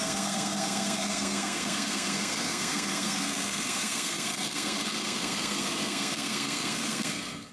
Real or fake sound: fake